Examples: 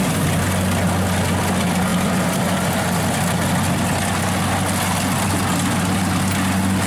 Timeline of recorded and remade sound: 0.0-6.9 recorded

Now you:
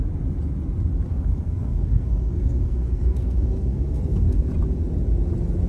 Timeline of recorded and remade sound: 0.0-1.1 recorded; 1.1-4.5 remade; 4.5-5.7 recorded